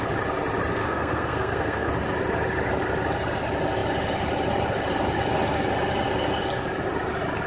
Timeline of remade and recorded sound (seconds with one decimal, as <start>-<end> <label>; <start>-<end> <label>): 0.0-0.8 recorded; 0.8-1.9 remade; 1.9-7.5 recorded